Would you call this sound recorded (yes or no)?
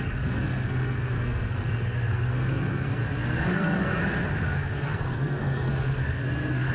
no